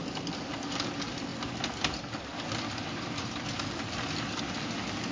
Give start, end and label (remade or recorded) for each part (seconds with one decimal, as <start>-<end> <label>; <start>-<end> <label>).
0.0-5.1 recorded